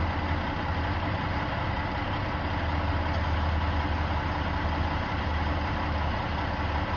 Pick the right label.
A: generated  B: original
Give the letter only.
B